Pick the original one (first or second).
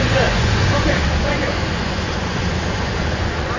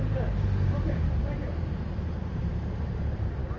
second